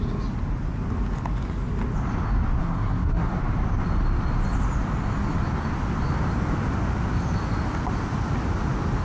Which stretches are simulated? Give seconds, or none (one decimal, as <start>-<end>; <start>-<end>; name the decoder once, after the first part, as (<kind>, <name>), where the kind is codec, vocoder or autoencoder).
2.6-3.4 (codec, SNAC)